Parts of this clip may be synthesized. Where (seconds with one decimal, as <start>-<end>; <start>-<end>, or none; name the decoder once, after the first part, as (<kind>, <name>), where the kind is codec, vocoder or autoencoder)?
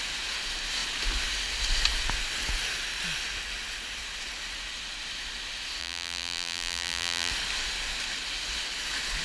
5.8-7.3 (vocoder, BigVGAN v2)